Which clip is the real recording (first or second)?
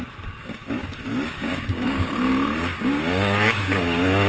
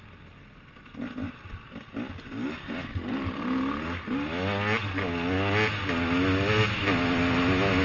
second